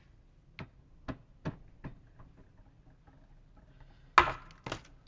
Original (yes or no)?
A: yes